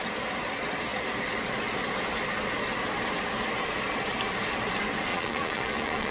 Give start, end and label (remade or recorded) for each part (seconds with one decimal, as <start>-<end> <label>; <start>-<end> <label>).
0.0-5.1 recorded; 5.1-6.1 remade